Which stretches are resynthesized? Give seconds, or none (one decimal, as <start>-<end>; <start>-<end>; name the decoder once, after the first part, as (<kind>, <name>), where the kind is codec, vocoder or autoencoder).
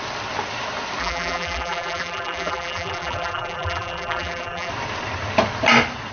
1.0-4.7 (vocoder, BigVGAN v2)